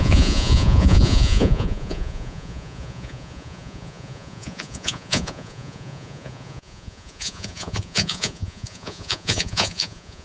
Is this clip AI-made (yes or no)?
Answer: yes